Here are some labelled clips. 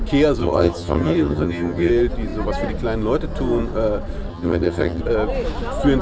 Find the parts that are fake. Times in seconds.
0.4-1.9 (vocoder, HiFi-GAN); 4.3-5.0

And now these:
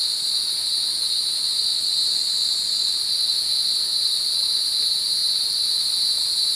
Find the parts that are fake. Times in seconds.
none